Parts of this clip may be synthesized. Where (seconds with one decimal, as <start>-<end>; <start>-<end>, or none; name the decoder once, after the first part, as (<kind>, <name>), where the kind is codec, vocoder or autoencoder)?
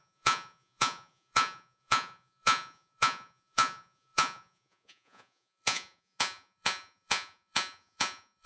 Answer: 0.0-8.5 (vocoder, Vocos)